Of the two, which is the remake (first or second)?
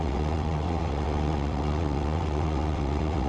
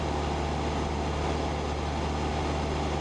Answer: first